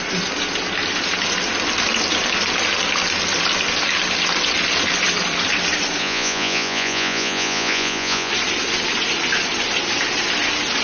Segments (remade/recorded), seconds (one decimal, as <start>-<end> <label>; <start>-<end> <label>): 0.0-6.0 recorded; 6.0-8.3 remade; 8.3-10.8 recorded